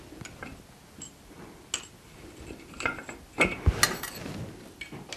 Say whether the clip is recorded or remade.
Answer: recorded